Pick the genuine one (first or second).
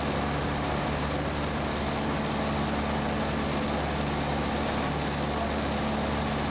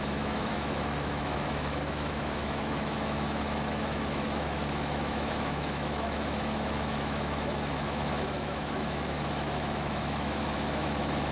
first